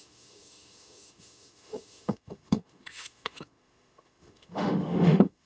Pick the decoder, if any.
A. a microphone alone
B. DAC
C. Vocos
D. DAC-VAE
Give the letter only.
D